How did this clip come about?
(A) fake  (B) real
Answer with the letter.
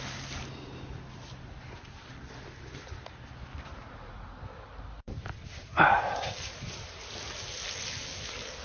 B